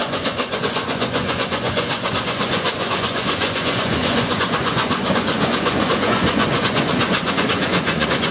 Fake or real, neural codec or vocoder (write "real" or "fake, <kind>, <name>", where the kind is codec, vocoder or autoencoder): fake, vocoder, Vocos